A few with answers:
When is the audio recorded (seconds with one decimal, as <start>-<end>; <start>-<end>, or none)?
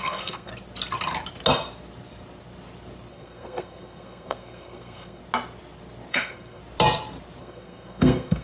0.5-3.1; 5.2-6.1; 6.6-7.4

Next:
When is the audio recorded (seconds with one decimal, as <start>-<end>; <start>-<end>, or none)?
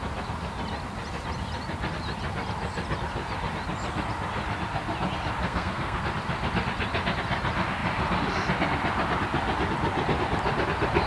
0.0-5.4; 6.0-11.1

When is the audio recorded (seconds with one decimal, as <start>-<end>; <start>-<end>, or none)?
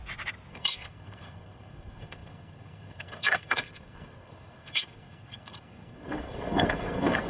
0.0-0.5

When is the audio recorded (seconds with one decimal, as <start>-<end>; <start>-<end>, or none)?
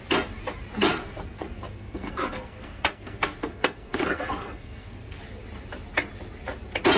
0.0-1.0; 5.2-7.0